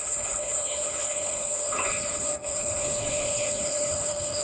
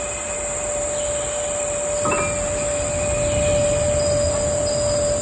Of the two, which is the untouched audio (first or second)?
second